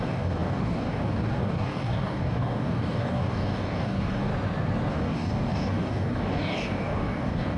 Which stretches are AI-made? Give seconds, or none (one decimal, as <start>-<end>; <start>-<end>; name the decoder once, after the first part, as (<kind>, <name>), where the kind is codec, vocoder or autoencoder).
0.0-4.3 (codec, DAC); 4.9-7.6